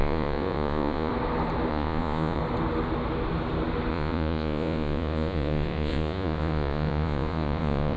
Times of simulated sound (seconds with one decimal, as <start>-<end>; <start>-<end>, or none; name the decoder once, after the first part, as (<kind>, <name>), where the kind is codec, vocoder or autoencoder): 0.0-1.1 (vocoder, Vocos); 1.7-2.4; 3.9-8.0